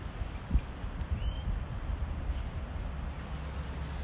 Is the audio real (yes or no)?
yes